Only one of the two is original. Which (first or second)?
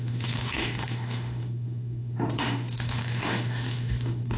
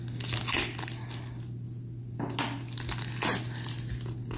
second